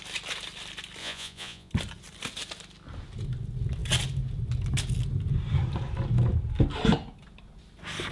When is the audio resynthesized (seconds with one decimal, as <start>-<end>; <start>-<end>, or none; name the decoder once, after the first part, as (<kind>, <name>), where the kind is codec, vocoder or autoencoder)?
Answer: 1.0-1.7 (vocoder, Vocos)